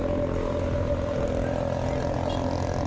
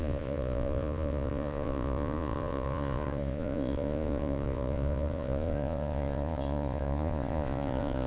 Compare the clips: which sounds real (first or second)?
first